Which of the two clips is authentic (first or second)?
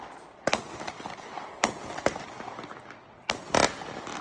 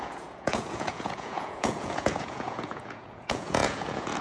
first